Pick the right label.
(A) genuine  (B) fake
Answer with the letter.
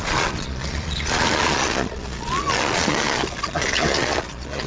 B